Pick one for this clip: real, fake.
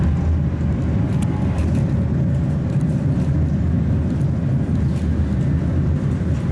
real